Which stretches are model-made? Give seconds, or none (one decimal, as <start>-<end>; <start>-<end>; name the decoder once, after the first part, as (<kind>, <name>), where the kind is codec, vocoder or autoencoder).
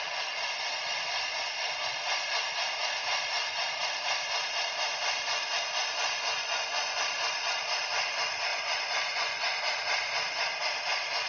6.4-7.0 (vocoder, Vocos); 8.5-9.6